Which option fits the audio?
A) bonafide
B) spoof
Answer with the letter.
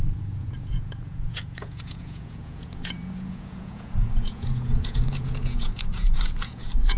B